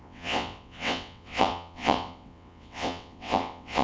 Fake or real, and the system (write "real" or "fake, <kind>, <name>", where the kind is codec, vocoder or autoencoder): fake, vocoder, WaveNeXt